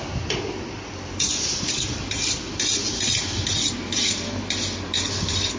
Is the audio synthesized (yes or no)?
no